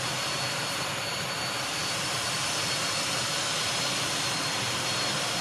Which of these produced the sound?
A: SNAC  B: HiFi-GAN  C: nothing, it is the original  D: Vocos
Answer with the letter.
C